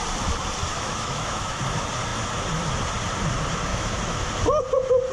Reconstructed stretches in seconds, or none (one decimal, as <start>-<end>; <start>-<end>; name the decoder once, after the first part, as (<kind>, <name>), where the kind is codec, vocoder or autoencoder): 0.7-1.6 (autoencoder, DAC-VAE); 3.7-4.3